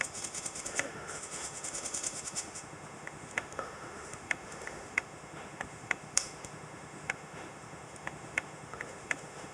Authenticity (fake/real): fake